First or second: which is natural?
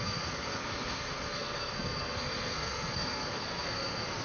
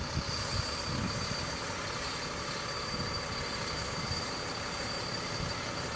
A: second